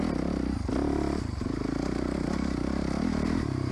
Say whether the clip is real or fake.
real